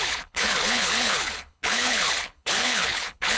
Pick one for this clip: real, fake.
fake